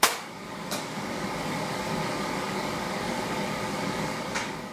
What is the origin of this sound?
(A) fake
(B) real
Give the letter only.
A